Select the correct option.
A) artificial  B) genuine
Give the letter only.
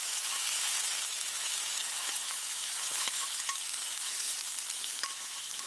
A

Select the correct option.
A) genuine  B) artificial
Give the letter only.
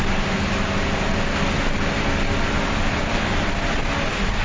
A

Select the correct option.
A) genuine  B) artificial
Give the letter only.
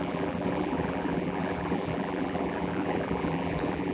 B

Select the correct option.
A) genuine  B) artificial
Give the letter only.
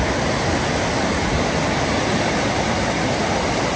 A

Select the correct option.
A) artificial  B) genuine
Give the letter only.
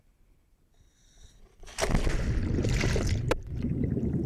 B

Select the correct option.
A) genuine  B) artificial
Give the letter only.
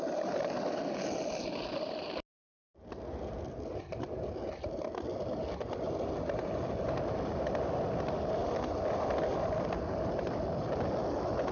A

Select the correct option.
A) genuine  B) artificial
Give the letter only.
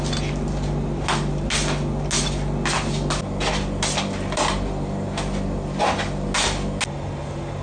A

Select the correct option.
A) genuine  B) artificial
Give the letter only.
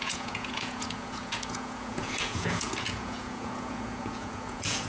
B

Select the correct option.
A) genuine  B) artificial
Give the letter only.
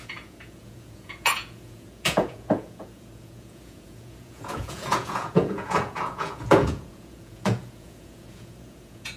B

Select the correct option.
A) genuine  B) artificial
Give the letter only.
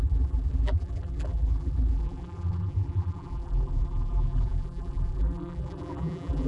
B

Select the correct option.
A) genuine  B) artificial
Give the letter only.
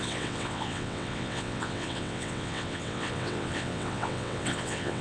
B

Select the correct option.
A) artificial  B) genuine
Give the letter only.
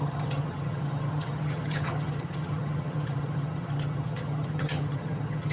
A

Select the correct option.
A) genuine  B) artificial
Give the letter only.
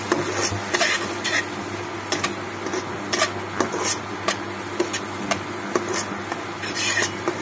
A